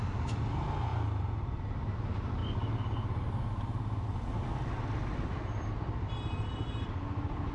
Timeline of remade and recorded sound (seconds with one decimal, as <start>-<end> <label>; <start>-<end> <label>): 0.0-7.5 recorded